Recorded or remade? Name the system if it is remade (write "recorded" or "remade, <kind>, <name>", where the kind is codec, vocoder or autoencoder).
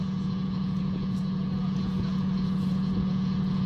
remade, vocoder, Vocos